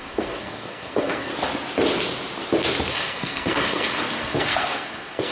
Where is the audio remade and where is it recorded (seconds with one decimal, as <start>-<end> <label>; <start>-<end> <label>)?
0.0-1.3 remade; 1.3-2.9 recorded; 2.9-5.3 remade